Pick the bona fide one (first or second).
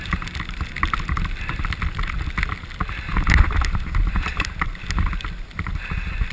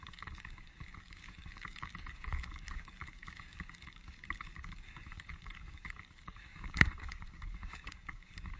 first